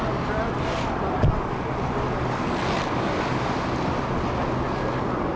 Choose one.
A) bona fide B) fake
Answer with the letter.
A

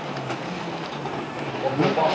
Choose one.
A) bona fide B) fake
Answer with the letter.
A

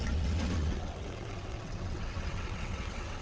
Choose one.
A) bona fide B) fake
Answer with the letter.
B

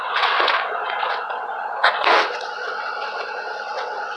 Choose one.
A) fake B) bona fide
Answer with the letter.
A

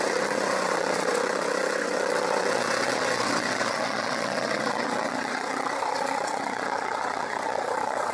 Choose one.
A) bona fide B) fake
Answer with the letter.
B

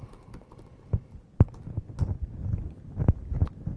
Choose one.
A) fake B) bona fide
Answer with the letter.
B